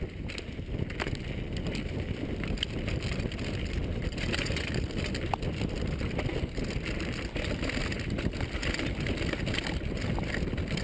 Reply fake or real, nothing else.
real